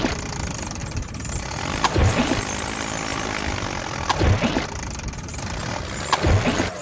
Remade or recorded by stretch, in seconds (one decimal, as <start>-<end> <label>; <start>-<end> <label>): 0.0-3.1 remade; 3.1-4.1 recorded; 4.1-5.3 remade; 5.3-6.8 recorded